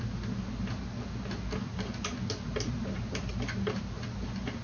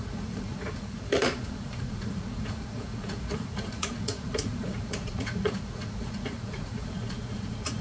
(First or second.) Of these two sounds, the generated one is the second